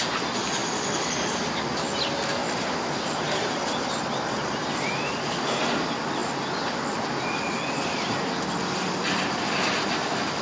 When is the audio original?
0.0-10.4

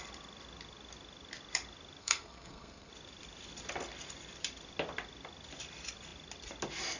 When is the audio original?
0.0-2.0; 2.9-7.0

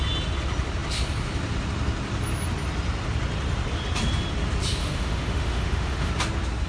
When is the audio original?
0.0-4.8; 6.1-6.7

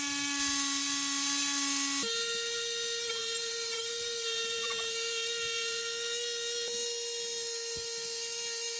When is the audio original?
0.0-3.2; 5.8-8.8

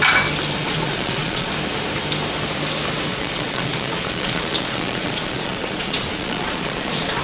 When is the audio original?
0.0-0.6; 1.5-3.1